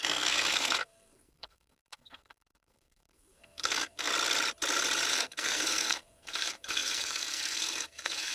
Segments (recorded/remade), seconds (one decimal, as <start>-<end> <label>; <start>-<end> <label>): 0.0-4.1 remade; 4.1-5.1 recorded; 5.1-8.3 remade